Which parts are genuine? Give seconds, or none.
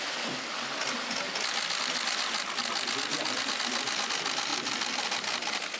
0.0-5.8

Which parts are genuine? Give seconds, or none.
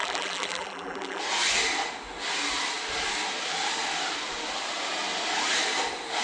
1.2-6.2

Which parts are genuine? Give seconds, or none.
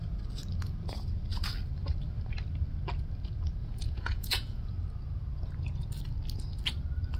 0.0-3.6; 4.7-7.2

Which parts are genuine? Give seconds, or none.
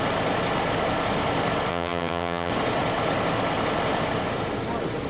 0.0-1.7; 2.5-5.1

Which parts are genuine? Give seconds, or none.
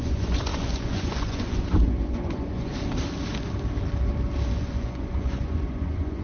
2.7-4.6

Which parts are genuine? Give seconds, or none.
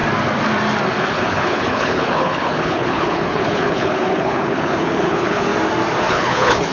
0.0-1.1; 5.5-6.1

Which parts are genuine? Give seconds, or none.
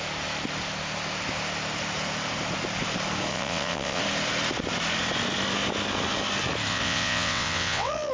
0.0-3.3; 4.0-6.7